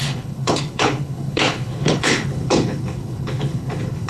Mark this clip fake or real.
fake